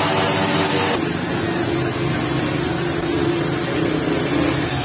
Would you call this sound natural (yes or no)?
yes